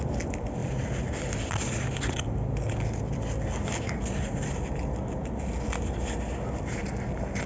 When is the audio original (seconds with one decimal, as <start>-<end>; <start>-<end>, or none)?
0.0-7.5